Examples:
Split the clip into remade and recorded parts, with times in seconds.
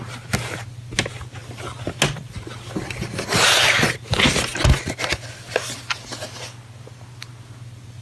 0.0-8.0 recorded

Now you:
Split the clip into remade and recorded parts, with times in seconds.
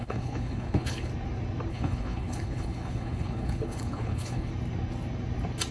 0.0-1.1 remade; 1.1-1.7 recorded; 1.7-4.5 remade; 4.5-5.7 recorded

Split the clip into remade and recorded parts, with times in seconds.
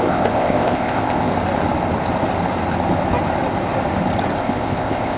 0.0-1.3 remade; 1.3-4.4 recorded; 4.4-5.2 remade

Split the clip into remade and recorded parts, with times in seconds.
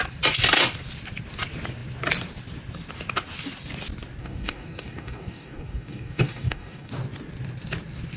0.0-4.2 recorded; 4.2-6.9 remade; 6.9-8.2 recorded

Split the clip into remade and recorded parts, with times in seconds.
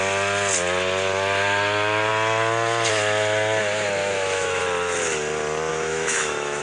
0.0-4.0 recorded; 4.0-4.6 remade; 4.6-5.7 recorded; 5.7-6.6 remade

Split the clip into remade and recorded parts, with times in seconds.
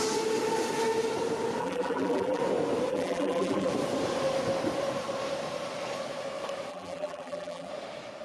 0.0-1.6 recorded; 1.6-2.4 remade; 2.4-2.9 recorded; 2.9-3.7 remade; 3.7-6.7 recorded; 6.7-7.7 remade; 7.7-8.2 recorded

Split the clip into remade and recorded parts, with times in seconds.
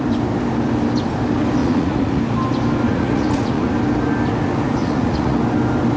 0.0-1.6 recorded; 1.6-2.2 remade; 2.2-2.9 recorded; 2.9-3.7 remade; 3.7-4.8 recorded; 4.8-5.4 remade; 5.4-6.0 recorded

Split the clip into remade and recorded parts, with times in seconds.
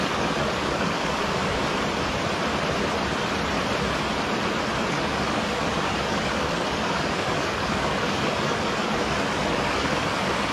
0.0-1.6 remade; 1.6-4.9 recorded; 4.9-10.5 remade